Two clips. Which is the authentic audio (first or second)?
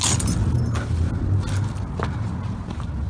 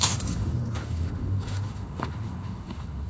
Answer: first